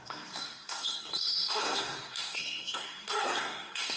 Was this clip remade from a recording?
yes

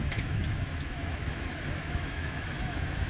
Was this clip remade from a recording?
yes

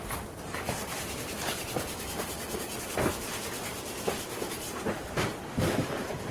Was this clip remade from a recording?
yes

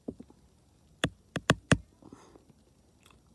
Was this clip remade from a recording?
no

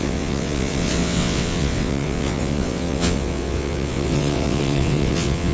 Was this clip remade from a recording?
yes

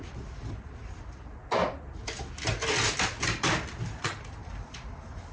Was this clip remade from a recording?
no